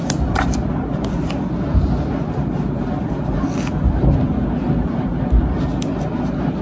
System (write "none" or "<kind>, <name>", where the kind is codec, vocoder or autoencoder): none